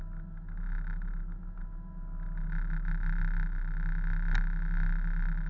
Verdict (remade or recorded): recorded